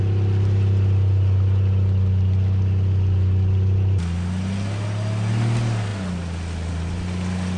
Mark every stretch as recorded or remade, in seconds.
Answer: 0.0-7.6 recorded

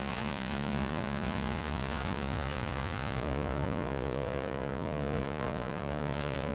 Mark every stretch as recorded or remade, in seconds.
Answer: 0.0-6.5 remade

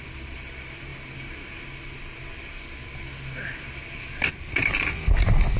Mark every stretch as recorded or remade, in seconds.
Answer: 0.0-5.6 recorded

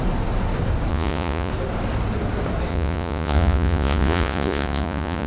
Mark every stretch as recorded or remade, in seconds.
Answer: 0.0-0.9 recorded; 0.9-1.5 remade; 1.5-2.7 recorded; 2.7-5.3 remade